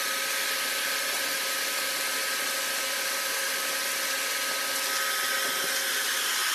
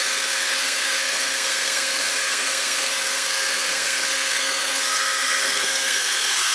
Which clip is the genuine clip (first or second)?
first